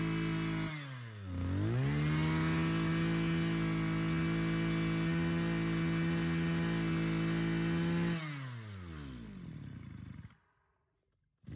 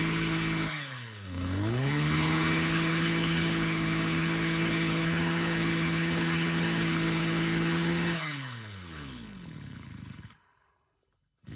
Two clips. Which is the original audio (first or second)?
first